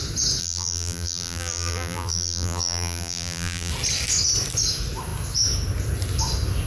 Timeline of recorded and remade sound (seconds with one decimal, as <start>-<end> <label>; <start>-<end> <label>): 0.0-0.4 recorded; 0.4-3.7 remade; 3.7-6.7 recorded